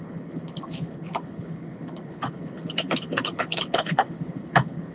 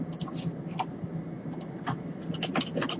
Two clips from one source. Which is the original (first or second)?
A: second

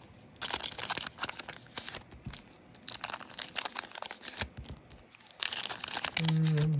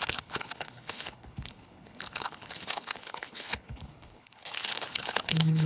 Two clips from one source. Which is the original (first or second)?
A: first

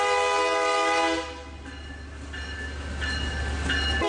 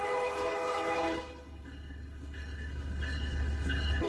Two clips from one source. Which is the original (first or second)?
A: first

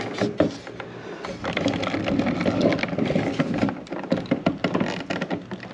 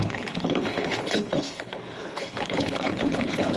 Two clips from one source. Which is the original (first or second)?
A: first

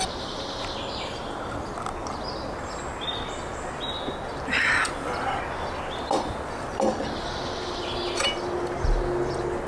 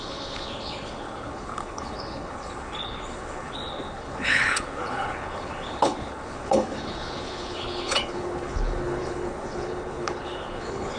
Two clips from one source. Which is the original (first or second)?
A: first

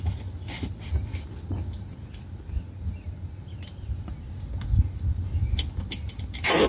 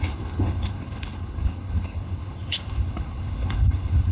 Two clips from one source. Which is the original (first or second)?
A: first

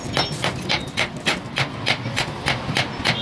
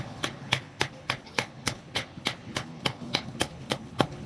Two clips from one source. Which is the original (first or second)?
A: first